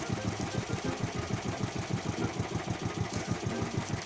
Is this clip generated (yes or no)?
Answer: no